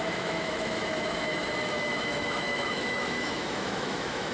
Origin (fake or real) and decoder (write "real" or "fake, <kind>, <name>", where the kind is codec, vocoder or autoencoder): fake, autoencoder, DAC-VAE